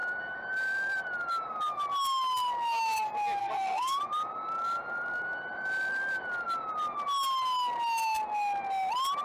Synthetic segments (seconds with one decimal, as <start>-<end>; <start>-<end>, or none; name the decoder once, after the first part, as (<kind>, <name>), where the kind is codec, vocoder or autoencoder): 3.4-4.0 (codec, SNAC)